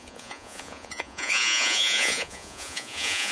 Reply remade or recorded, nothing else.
remade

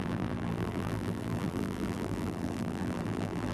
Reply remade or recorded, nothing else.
remade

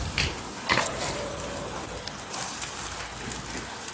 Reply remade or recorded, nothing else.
recorded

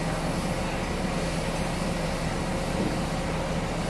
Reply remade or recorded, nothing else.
recorded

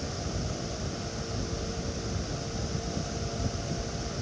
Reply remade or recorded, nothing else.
recorded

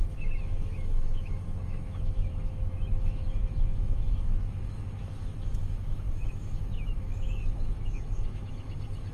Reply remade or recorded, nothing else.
remade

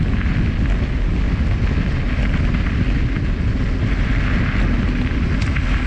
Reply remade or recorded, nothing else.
recorded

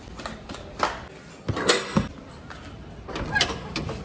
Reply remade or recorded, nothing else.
recorded